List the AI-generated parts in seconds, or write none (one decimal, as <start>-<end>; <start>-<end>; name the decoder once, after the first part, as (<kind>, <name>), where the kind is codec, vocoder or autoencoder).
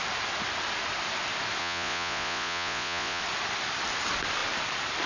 1.6-3.2 (vocoder, Vocos)